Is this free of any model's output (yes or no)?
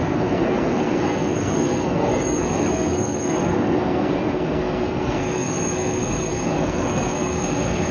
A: no